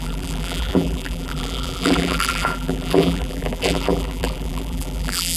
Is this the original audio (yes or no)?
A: no